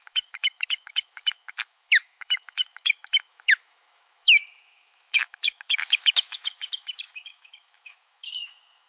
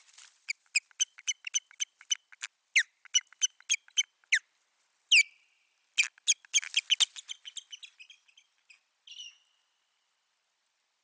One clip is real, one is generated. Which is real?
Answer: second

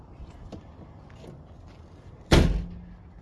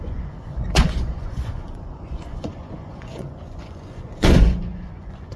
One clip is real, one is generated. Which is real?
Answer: first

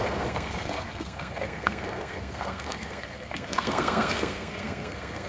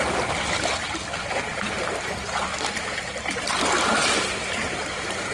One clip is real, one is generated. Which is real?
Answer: second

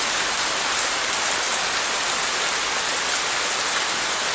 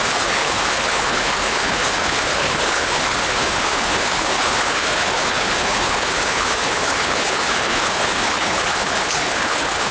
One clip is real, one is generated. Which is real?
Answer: first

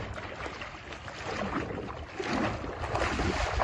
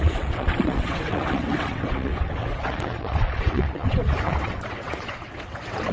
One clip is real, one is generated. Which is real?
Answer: first